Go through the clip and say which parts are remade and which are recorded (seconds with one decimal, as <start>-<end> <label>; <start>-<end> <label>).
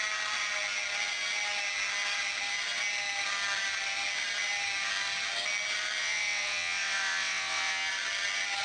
0.0-6.0 recorded; 6.0-7.9 remade; 7.9-8.6 recorded